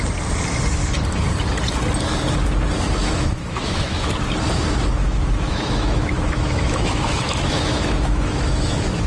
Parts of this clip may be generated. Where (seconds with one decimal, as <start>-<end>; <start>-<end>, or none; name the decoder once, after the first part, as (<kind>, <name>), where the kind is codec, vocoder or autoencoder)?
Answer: 3.0-4.1 (autoencoder, DAC-VAE); 5.0-9.1